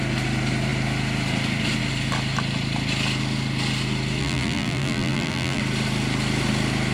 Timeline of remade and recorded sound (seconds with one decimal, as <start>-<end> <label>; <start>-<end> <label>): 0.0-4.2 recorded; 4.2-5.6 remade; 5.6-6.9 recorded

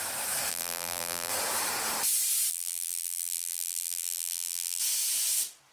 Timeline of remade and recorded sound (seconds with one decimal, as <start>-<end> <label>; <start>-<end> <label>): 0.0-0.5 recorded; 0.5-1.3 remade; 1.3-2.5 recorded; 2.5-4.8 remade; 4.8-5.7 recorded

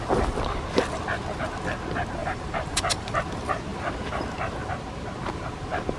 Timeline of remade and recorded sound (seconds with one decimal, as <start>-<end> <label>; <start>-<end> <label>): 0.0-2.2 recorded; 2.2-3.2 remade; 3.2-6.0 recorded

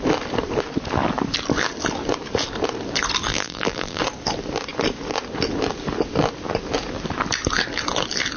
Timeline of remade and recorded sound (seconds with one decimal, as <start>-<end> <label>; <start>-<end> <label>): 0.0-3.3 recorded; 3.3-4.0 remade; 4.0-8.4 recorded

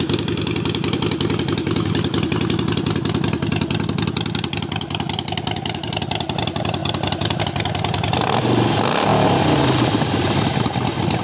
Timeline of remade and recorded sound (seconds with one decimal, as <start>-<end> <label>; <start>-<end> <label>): 0.0-6.8 recorded; 6.8-7.4 remade; 7.4-11.2 recorded

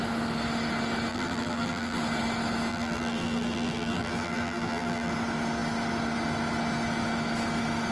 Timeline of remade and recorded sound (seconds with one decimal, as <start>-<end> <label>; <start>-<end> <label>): 0.0-1.1 recorded; 1.1-2.0 remade; 2.0-2.7 recorded; 2.7-5.1 remade; 5.1-7.9 recorded

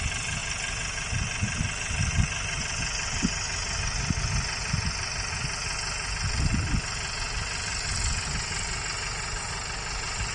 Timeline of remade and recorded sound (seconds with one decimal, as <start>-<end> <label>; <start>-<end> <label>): 0.0-10.3 recorded